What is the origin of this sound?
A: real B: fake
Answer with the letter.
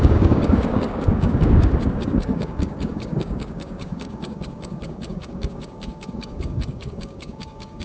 B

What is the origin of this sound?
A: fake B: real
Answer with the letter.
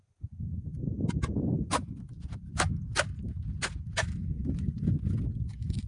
B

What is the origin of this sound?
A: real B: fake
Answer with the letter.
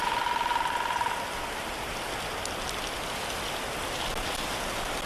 A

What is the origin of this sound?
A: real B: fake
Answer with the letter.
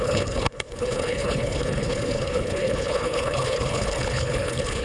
B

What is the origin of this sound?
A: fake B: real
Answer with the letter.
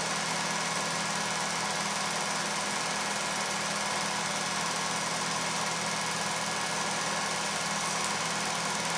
B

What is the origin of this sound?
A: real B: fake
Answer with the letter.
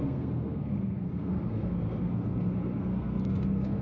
B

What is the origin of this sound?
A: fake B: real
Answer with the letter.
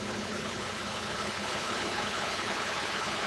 A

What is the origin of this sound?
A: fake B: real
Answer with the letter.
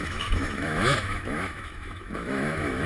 A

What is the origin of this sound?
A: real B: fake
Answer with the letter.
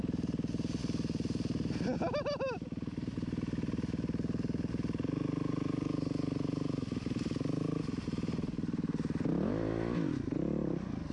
A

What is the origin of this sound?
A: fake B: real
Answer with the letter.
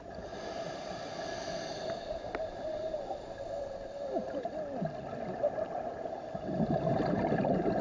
B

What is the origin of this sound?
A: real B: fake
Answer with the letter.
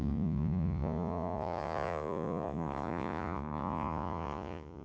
B